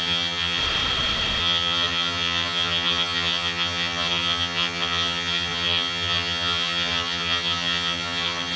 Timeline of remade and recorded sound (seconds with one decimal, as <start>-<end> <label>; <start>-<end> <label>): 0.0-0.6 remade; 0.6-1.4 recorded; 1.4-8.6 remade